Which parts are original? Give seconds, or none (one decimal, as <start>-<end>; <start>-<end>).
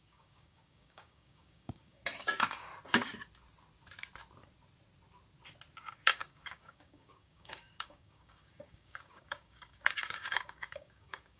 2.7-5.8